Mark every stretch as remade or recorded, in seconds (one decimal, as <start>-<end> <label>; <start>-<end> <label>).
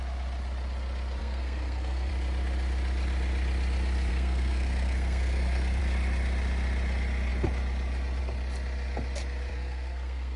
0.0-1.2 recorded; 1.2-2.1 remade; 2.1-4.1 recorded; 4.1-5.8 remade; 5.8-9.5 recorded; 9.5-10.4 remade